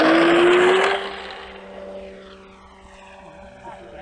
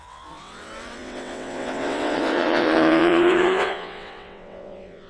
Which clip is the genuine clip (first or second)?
first